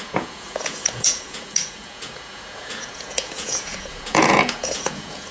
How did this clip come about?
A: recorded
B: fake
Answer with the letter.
B